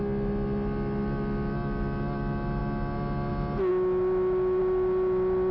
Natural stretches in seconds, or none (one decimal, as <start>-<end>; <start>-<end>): 0.0-5.5

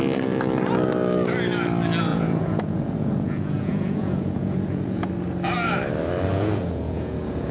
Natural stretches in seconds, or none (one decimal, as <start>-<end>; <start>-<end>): 0.0-2.1; 5.1-6.3

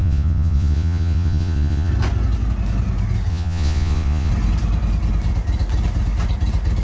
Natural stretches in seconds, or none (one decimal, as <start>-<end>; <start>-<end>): 1.9-3.3; 4.3-6.8

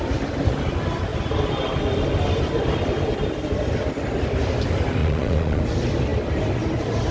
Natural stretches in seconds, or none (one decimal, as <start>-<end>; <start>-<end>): 0.0-5.0; 5.6-7.1

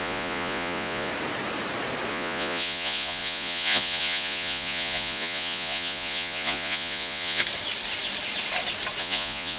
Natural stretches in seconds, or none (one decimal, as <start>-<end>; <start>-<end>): 1.1-2.1; 7.4-9.0

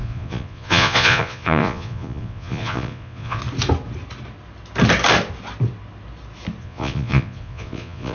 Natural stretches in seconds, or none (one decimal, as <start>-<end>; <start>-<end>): 3.4-6.6

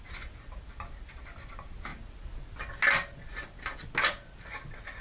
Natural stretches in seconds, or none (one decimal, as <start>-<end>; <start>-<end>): 0.0-5.0

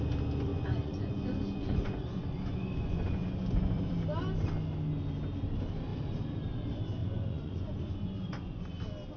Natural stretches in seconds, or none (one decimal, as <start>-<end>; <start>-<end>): 0.0-0.5; 3.9-7.0; 8.6-9.2